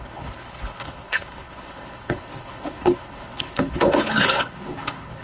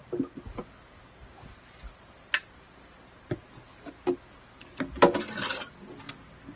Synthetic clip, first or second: first